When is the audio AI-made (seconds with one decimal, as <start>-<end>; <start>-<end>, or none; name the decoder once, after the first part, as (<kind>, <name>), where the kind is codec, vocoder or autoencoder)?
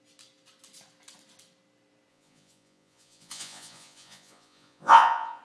2.1-5.4 (vocoder, Vocos)